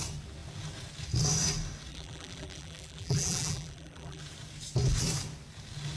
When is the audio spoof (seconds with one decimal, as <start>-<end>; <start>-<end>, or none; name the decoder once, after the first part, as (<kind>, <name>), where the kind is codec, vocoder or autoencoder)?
1.9-4.2 (vocoder, BigVGAN v2)

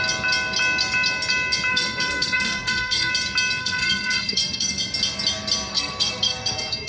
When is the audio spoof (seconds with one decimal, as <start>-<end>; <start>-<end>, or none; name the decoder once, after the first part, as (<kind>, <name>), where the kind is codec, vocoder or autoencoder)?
1.7-3.1 (codec, SNAC); 3.6-4.8; 5.7-6.9

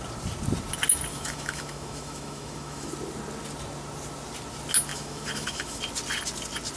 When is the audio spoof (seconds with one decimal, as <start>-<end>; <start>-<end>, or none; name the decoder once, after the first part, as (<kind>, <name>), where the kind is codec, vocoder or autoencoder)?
1.1-2.9 (autoencoder, DAC-VAE); 4.9-5.8

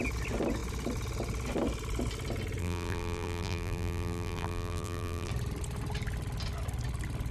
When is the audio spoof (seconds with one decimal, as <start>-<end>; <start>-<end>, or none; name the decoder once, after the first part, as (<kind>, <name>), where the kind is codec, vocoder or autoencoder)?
2.6-5.3 (vocoder, BigVGAN v2)